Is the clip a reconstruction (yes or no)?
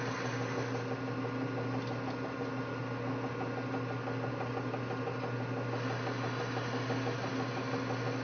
no